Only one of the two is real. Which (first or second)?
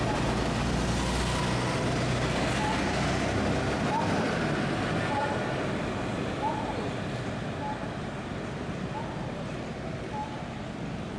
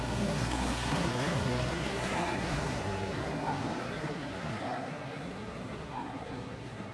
first